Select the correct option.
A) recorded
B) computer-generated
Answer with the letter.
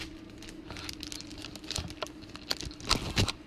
A